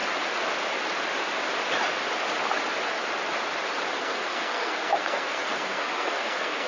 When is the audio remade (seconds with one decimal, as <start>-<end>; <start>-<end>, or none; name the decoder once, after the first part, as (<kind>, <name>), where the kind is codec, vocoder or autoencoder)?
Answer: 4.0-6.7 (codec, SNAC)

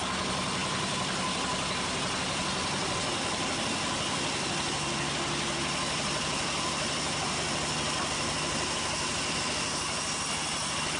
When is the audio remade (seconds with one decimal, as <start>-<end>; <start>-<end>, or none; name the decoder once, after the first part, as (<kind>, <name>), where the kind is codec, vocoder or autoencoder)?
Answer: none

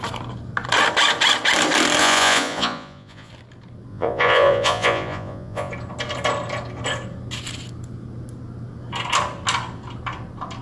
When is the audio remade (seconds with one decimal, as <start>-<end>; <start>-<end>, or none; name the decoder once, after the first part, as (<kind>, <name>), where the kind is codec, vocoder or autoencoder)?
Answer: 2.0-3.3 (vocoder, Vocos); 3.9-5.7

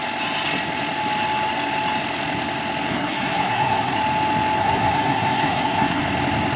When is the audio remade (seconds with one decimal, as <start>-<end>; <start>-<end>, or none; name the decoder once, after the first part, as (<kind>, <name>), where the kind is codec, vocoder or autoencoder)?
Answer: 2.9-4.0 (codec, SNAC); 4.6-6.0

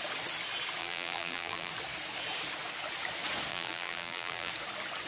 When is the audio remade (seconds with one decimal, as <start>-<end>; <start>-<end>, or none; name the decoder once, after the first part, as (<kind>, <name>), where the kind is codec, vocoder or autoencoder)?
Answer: 0.8-1.7 (vocoder, BigVGAN v2); 3.5-4.5